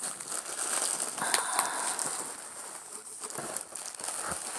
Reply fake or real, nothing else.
real